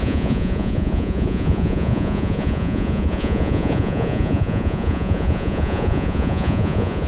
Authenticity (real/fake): fake